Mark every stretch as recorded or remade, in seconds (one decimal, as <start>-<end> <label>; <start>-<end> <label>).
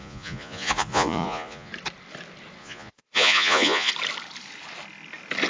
0.0-1.7 remade; 1.7-2.6 recorded; 2.6-3.9 remade; 3.9-5.5 recorded